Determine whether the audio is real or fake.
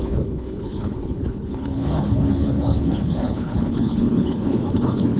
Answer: fake